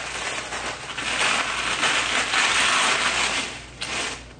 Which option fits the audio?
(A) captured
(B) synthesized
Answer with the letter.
A